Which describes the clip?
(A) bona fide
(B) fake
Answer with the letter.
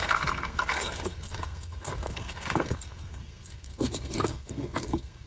B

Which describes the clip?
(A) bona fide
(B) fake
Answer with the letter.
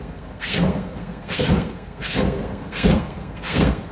B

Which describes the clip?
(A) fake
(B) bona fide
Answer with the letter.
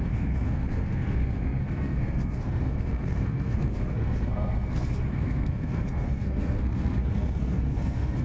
A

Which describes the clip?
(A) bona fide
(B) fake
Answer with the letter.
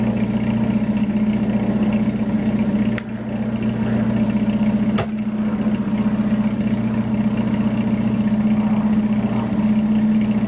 A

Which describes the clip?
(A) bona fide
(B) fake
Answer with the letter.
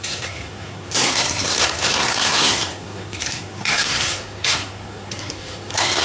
B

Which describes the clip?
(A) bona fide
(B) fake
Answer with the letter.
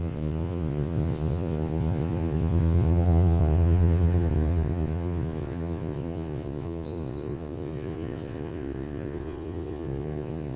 B